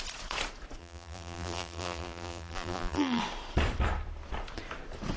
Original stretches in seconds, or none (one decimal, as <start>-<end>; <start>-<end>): 0.0-0.8; 3.2-5.2